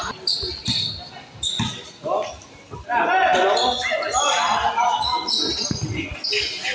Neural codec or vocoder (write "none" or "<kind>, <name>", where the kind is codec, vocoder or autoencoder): none